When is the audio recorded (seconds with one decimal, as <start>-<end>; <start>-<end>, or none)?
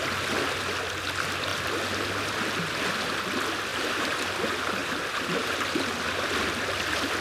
0.0-3.7; 4.3-4.8; 5.9-7.2